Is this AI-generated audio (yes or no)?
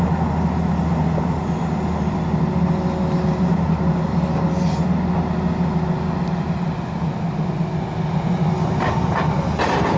no